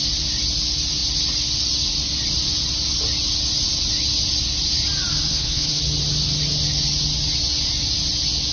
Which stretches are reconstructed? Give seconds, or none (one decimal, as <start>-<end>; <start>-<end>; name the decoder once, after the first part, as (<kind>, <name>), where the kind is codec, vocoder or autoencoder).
5.3-5.8 (codec, HILCodec)